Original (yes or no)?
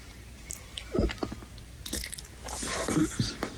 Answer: yes